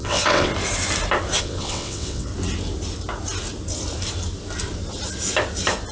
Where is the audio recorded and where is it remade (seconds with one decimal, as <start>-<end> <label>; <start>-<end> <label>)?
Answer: 0.0-0.5 remade; 0.5-1.4 recorded; 1.4-2.3 remade; 2.3-5.9 recorded